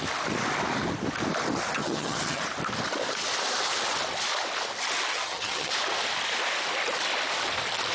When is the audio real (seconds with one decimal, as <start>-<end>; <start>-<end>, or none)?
0.0-1.8; 2.4-5.1; 5.7-7.9